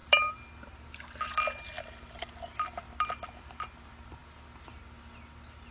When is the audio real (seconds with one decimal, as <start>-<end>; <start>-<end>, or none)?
0.0-5.7